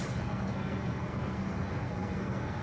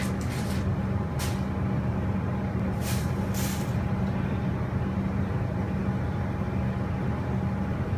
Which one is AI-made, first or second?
first